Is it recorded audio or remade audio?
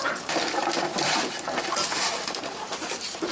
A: remade